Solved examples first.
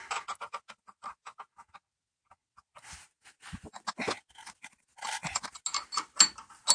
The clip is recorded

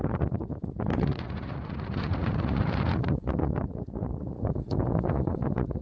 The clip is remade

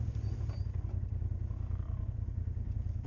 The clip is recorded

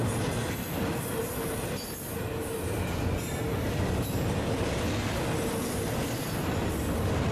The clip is recorded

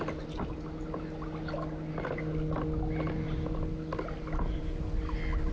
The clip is recorded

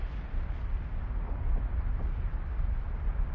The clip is recorded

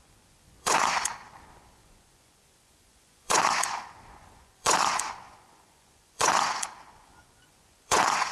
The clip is remade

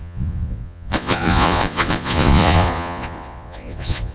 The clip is remade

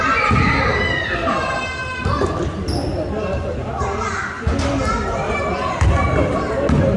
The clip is recorded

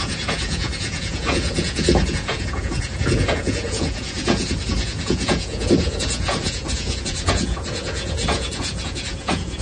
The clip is remade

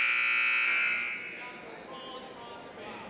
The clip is recorded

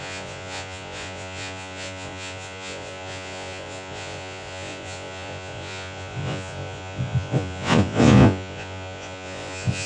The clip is remade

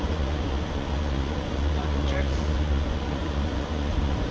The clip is remade